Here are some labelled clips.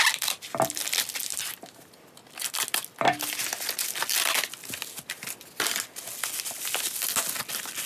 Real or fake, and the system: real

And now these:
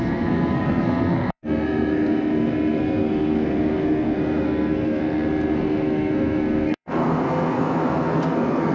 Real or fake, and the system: fake, codec, SNAC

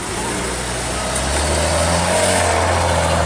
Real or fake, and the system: real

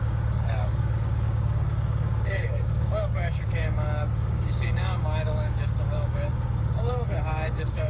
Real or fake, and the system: fake, codec, DAC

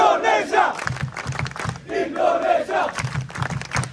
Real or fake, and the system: fake, vocoder, BigVGAN v2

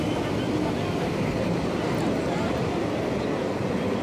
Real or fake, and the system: real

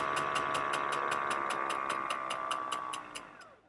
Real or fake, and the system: real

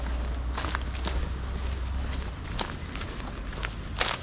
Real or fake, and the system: real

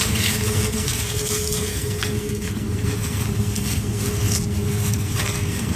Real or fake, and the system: fake, codec, SNAC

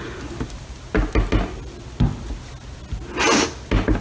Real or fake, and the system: real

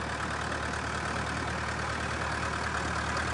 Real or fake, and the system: real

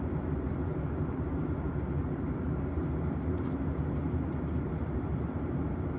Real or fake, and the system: fake, vocoder, BigVGAN v2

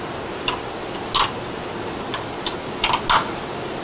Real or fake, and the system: real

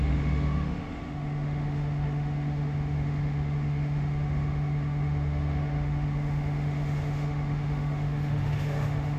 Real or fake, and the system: fake, autoencoder, DAC-VAE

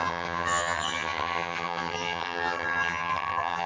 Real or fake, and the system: fake, vocoder, HiFi-GAN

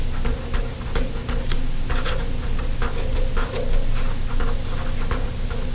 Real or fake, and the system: real